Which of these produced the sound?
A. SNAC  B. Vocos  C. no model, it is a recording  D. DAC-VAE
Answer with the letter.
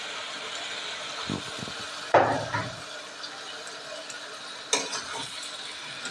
C